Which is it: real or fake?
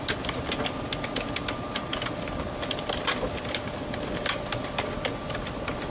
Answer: real